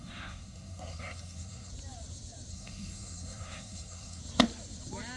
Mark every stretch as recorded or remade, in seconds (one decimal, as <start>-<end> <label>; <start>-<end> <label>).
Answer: 0.0-1.7 remade; 1.7-2.5 recorded; 2.5-4.2 remade; 4.2-5.2 recorded